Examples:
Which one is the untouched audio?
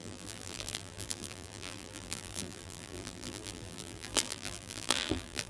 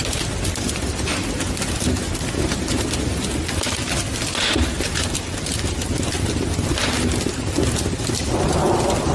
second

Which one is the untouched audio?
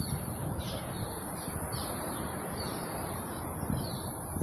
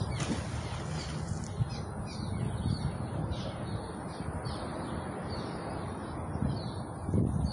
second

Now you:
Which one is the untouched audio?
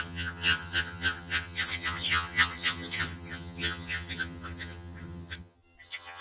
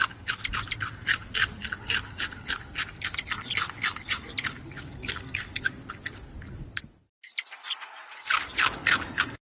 second